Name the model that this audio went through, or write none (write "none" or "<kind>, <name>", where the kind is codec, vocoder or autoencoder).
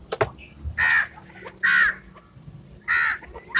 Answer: none